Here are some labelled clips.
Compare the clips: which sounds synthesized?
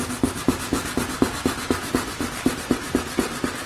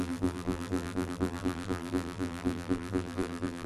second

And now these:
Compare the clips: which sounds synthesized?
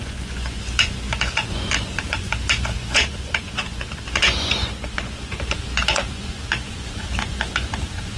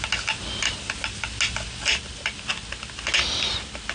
first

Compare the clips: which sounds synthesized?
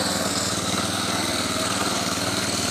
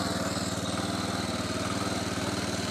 first